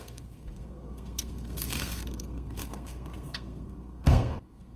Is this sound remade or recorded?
remade